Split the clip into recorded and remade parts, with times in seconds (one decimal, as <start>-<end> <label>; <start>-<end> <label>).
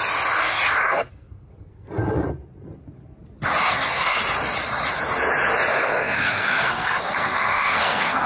0.0-0.8 recorded; 0.8-1.9 remade; 1.9-3.7 recorded; 3.7-4.2 remade; 4.2-5.7 recorded; 5.7-8.3 remade